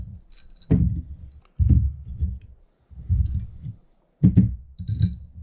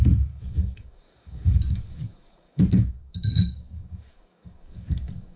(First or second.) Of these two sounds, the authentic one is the first